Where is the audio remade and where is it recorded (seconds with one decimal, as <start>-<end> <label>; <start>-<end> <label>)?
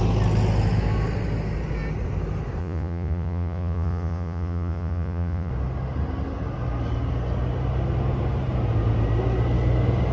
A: 0.0-2.6 recorded; 2.6-5.5 remade; 5.5-10.1 recorded